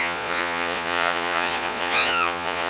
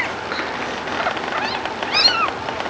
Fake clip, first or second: first